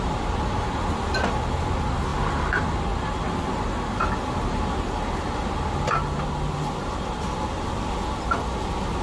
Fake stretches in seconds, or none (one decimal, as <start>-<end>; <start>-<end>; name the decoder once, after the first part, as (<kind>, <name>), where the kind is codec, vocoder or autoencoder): none